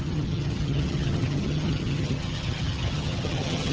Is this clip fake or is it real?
fake